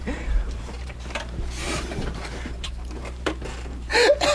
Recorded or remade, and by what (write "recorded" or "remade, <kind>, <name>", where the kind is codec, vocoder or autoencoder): remade, vocoder, BigVGAN v2